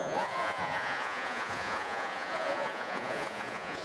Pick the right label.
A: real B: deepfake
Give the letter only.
B